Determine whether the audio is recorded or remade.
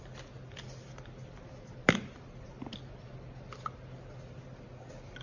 recorded